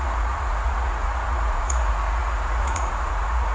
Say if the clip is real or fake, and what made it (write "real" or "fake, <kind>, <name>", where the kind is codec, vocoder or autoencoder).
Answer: fake, vocoder, Vocos